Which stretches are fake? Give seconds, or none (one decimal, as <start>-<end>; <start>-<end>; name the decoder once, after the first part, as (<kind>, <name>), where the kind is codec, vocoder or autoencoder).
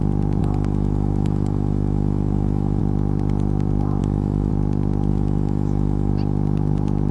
0.4-2.8 (autoencoder, DAC-VAE); 4.0-4.5; 5.1-6.1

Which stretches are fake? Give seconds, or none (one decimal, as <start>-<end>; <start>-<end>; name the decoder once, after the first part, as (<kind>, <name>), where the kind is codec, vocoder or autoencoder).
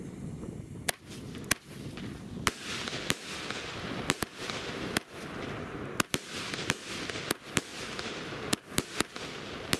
none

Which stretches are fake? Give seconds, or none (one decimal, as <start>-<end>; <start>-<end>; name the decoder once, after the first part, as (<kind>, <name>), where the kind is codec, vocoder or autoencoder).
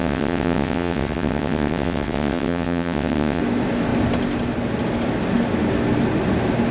0.0-3.4 (vocoder, WaveNeXt)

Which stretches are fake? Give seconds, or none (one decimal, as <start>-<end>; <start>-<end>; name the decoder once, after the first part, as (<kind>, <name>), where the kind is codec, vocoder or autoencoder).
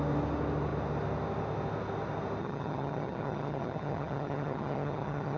2.4-5.4 (vocoder, HiFi-GAN)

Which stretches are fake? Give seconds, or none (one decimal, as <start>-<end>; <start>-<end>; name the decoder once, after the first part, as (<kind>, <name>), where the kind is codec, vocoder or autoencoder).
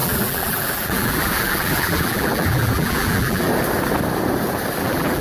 0.0-3.5 (vocoder, BigVGAN v2); 4.8-5.2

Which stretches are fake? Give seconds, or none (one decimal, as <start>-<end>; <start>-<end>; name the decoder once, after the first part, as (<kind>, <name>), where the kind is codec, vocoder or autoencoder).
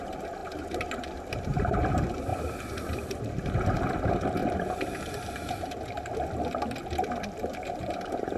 0.0-2.3 (vocoder, BigVGAN v2); 3.2-4.4; 7.9-8.4